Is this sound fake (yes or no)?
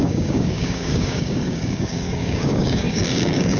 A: yes